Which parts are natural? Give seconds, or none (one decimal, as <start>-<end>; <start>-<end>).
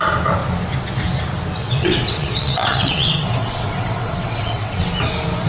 0.0-1.6; 4.9-5.5